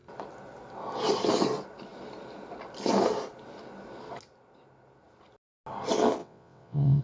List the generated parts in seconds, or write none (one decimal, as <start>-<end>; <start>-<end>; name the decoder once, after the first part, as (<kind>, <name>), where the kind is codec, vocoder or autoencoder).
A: 6.2-7.0 (vocoder, WaveNeXt)